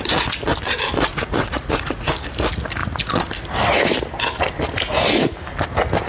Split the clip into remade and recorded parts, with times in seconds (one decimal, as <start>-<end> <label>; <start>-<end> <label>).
0.0-1.1 recorded; 1.1-2.1 remade; 2.1-6.1 recorded